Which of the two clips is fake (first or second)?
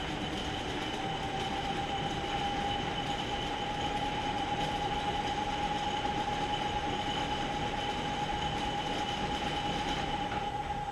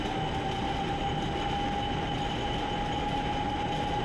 first